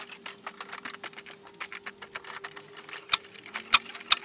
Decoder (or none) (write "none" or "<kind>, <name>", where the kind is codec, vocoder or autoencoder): none